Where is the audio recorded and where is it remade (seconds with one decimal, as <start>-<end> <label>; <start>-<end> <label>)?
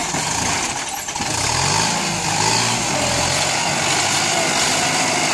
0.0-5.3 recorded